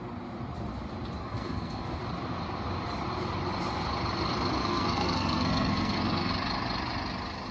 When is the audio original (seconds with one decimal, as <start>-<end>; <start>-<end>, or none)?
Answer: 0.0-1.2; 2.0-4.6; 6.3-7.5